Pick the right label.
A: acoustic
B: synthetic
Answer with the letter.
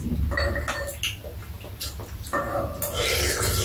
A